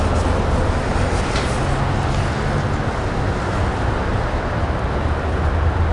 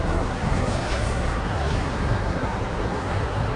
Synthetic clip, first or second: second